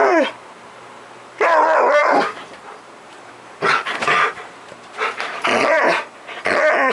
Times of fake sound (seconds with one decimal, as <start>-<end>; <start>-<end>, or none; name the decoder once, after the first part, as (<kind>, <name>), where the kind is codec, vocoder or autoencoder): 0.0-1.5 (vocoder, BigVGAN v2); 2.0-6.0